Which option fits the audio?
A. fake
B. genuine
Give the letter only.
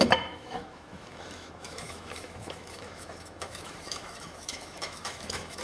A